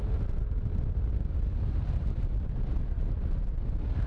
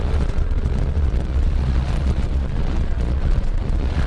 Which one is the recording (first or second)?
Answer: first